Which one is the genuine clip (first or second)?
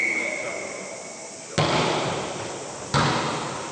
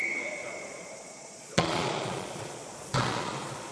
first